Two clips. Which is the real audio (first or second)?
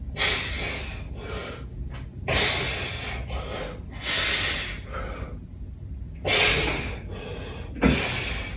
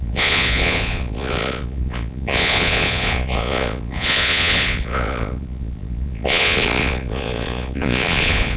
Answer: first